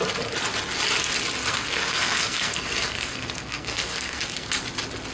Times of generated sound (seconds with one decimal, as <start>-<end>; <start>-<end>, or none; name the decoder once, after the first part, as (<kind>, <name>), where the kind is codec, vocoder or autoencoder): 1.4-4.5 (codec, SNAC)